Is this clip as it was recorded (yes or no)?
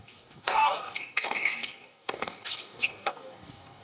no